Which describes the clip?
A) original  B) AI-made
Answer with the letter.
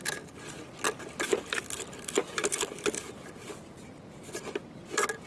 A